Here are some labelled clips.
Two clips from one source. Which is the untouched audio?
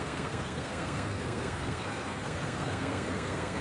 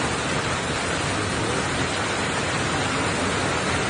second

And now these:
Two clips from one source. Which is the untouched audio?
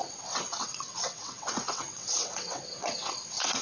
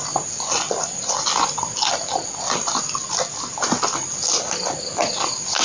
second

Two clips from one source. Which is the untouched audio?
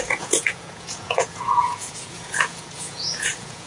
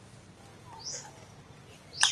second